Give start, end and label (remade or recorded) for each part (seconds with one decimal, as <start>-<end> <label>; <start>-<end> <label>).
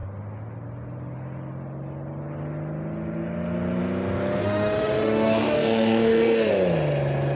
0.0-4.4 recorded; 4.4-6.5 remade; 6.5-7.4 recorded